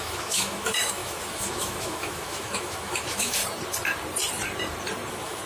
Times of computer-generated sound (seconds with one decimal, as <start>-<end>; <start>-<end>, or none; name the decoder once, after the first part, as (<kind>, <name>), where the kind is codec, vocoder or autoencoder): 0.0-3.4 (autoencoder, DAC-VAE); 5.1-5.5